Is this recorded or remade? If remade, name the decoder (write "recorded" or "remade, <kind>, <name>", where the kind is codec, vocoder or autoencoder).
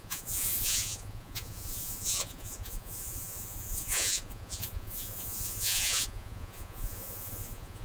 remade, vocoder, Vocos